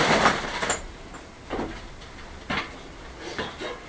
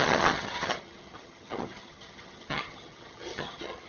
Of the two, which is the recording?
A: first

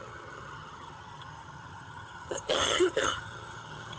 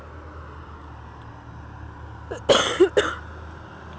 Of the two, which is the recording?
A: second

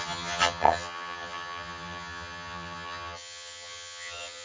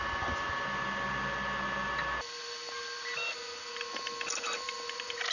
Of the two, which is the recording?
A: second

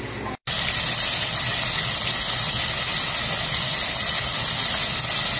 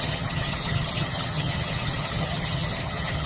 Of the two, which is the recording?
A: first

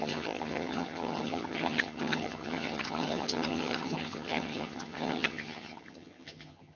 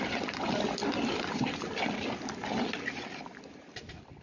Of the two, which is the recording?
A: second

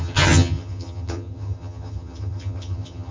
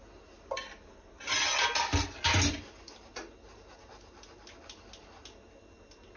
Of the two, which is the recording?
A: second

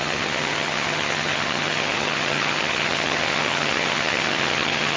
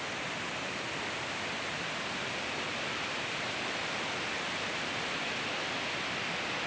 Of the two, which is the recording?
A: second